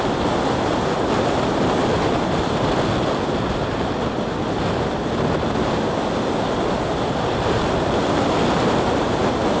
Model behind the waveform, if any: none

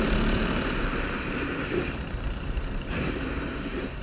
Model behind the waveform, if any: vocoder, BigVGAN v2